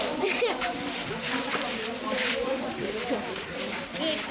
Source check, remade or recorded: remade